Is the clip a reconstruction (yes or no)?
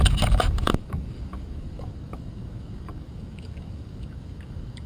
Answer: yes